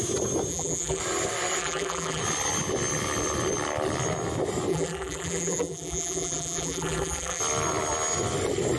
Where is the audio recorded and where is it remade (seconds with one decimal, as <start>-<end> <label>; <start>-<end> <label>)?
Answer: 0.0-0.5 recorded; 0.5-1.0 remade; 1.0-1.6 recorded; 1.6-2.2 remade; 2.2-4.7 recorded; 4.7-7.4 remade; 7.4-8.8 recorded